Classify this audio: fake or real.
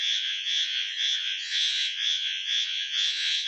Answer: fake